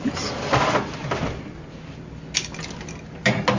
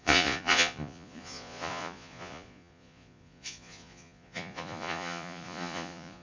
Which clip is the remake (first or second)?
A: second